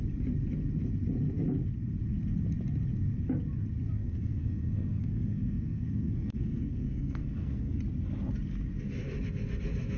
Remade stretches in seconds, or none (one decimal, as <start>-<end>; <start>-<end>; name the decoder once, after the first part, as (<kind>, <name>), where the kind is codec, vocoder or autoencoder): 4.0-7.8 (codec, SNAC)